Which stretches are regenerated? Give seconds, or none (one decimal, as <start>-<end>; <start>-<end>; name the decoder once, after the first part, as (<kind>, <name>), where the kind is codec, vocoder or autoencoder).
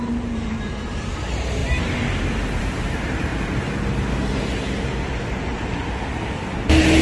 0.0-3.3 (vocoder, BigVGAN v2)